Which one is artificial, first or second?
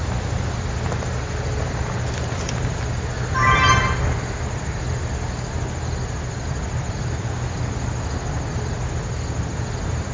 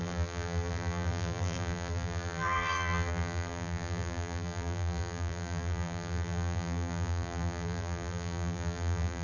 second